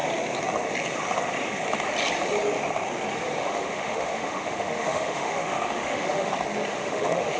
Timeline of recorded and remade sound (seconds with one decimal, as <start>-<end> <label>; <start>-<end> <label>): 0.0-3.4 recorded; 3.4-6.3 remade; 6.3-6.7 recorded; 6.7-7.4 remade